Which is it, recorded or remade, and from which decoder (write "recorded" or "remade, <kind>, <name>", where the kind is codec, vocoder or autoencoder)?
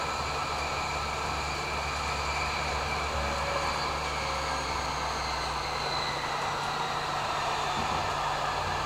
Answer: recorded